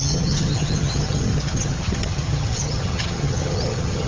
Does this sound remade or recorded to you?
remade